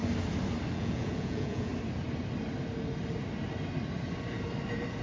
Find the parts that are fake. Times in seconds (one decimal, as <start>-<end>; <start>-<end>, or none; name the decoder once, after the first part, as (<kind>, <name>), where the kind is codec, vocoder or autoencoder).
0.7-1.7 (vocoder, Vocos)